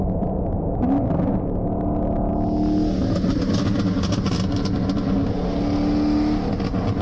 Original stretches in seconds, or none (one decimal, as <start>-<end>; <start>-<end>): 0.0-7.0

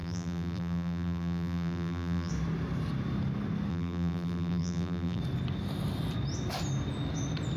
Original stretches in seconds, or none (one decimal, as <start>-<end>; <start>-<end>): 2.3-3.7; 5.2-7.6

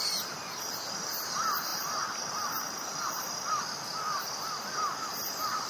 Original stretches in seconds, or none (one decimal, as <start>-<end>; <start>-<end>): 0.0-1.7; 3.4-5.7